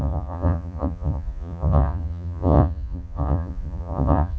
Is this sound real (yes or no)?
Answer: no